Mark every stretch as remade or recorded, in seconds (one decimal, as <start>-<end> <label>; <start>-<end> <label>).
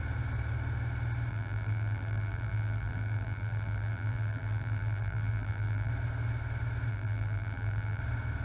0.0-1.3 recorded; 1.3-5.9 remade; 5.9-6.9 recorded; 6.9-8.0 remade; 8.0-8.4 recorded